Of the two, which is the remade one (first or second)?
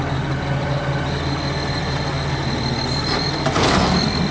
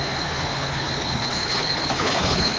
second